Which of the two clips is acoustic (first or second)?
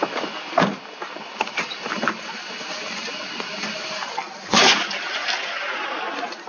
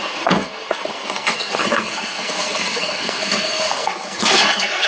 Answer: first